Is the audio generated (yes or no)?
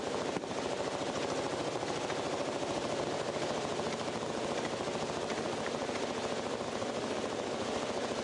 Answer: no